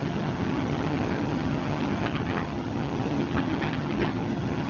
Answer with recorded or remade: remade